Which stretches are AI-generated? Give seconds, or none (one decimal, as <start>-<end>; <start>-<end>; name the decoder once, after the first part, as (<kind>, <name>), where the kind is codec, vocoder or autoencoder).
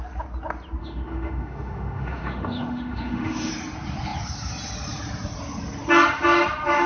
0.8-3.5 (autoencoder, DAC-VAE)